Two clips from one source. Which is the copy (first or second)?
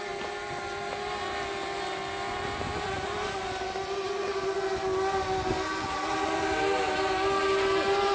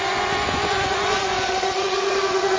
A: second